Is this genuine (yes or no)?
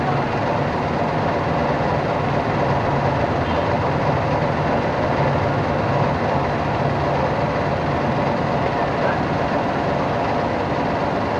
yes